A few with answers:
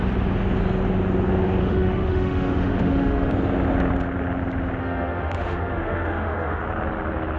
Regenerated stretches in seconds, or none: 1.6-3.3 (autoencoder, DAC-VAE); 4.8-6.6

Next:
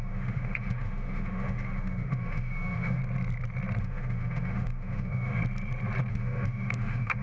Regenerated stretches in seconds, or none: 0.0-3.0 (autoencoder, DAC-VAE); 3.8-5.4; 6.1-7.2